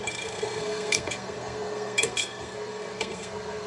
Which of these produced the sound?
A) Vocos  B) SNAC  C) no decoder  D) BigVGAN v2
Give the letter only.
B